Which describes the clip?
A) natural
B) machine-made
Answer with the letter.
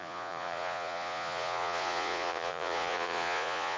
B